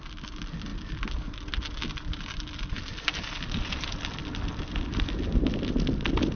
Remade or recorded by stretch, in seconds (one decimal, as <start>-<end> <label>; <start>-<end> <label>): 0.0-6.4 recorded